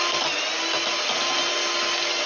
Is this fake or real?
real